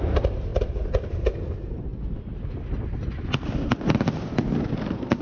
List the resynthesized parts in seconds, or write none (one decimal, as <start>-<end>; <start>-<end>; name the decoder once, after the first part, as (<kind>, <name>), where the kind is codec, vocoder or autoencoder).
0.0-0.5 (vocoder, BigVGAN v2); 1.2-1.9; 4.7-5.2